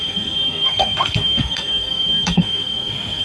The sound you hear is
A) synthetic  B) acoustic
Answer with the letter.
A